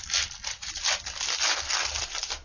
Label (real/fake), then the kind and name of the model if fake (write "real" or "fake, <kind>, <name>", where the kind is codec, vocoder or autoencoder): real